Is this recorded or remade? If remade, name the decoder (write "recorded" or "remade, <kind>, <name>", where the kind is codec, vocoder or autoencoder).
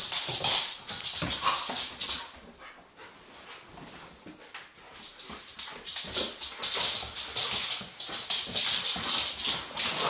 recorded